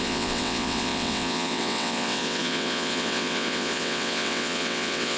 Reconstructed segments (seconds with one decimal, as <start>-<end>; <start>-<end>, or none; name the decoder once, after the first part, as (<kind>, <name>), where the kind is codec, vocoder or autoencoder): 0.0-5.2 (vocoder, WaveNeXt)